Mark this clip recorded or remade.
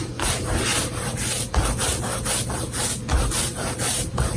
recorded